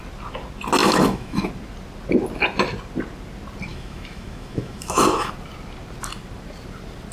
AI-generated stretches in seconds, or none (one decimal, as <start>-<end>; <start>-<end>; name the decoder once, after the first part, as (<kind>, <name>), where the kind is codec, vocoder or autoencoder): 0.8-1.5 (autoencoder, DAC-VAE); 3.7-5.3